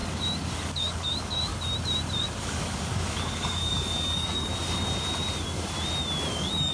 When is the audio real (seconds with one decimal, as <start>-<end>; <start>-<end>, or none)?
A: 0.0-0.6; 1.5-2.4; 4.5-6.3